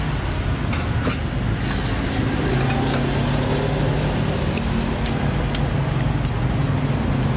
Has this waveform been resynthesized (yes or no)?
no